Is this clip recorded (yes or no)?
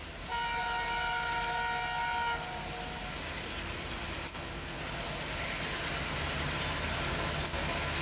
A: yes